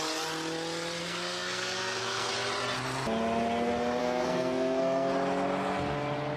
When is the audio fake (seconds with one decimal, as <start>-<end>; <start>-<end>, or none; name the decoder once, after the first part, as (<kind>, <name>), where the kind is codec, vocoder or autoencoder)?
1.0-2.3 (codec, SNAC); 4.0-5.1